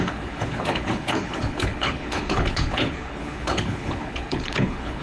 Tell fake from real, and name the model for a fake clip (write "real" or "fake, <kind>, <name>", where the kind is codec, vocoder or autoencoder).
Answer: fake, codec, HILCodec